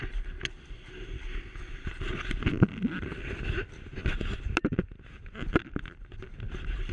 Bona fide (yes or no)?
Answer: yes